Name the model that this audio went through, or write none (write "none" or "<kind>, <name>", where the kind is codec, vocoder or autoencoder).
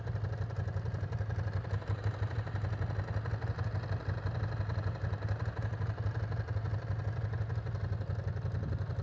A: none